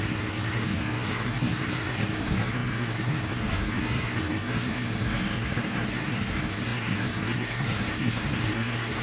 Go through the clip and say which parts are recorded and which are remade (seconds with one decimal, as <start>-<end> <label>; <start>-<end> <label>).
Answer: 0.0-9.0 remade

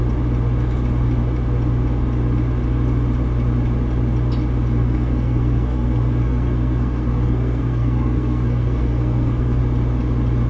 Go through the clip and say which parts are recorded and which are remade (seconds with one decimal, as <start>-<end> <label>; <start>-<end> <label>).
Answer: 0.0-4.8 recorded; 4.8-9.6 remade; 9.6-10.5 recorded

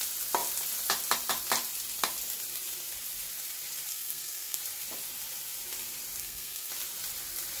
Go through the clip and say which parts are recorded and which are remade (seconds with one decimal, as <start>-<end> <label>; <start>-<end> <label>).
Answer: 0.0-3.9 recorded; 3.9-4.6 remade; 4.6-6.2 recorded; 6.2-6.7 remade; 6.7-7.6 recorded

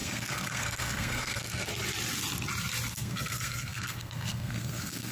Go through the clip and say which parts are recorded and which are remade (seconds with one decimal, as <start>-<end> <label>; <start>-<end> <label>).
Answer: 0.0-1.7 remade; 1.7-2.9 recorded; 2.9-5.1 remade

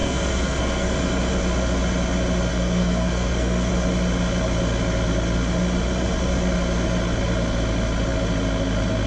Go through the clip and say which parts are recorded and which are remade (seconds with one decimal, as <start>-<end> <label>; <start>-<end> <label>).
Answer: 0.0-0.9 remade; 0.9-2.5 recorded; 2.5-3.7 remade; 3.7-9.1 recorded

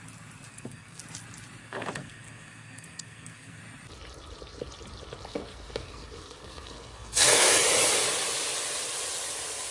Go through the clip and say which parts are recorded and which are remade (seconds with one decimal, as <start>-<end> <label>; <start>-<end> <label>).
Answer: 0.0-0.5 recorded; 0.5-1.0 remade; 1.0-1.6 recorded; 1.6-3.6 remade; 3.6-5.3 recorded; 5.3-7.5 remade; 7.5-9.7 recorded

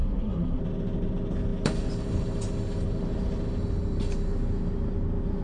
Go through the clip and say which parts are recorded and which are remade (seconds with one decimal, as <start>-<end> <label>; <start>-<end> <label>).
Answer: 0.0-0.6 remade; 0.6-5.4 recorded

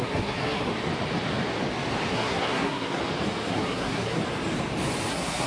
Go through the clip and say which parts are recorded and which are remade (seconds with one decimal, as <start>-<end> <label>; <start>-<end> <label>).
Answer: 0.0-0.7 remade; 0.7-2.1 recorded; 2.1-3.0 remade; 3.0-3.5 recorded; 3.5-4.2 remade; 4.2-5.1 recorded; 5.1-5.5 remade